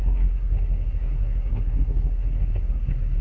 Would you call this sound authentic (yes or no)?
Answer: no